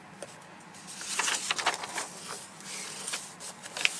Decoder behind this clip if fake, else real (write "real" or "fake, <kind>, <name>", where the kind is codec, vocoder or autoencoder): real